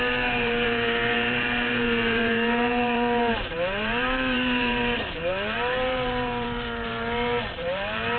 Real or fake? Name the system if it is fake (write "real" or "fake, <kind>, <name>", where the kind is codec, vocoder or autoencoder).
fake, vocoder, BigVGAN v2